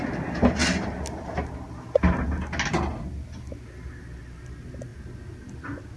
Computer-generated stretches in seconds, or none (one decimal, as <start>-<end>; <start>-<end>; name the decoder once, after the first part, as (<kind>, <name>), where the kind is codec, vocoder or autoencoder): none